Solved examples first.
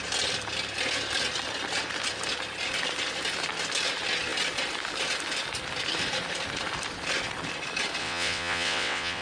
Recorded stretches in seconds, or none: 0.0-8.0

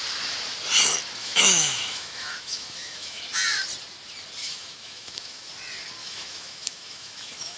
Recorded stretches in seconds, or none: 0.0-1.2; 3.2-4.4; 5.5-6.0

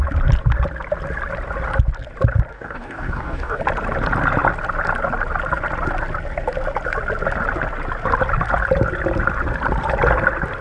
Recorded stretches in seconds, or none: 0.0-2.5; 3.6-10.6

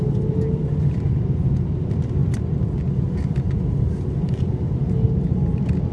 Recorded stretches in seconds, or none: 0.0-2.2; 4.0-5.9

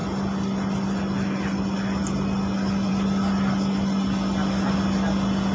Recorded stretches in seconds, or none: 0.0-5.5